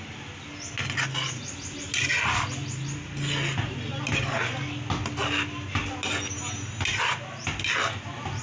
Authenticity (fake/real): real